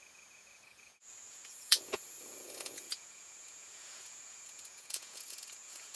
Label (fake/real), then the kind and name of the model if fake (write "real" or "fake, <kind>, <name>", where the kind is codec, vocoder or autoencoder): fake, vocoder, Vocos